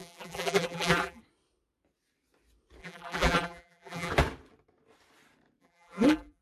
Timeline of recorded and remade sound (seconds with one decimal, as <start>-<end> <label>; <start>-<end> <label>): 0.0-1.2 remade; 1.2-2.8 recorded; 2.8-4.1 remade; 4.1-5.6 recorded; 5.6-6.4 remade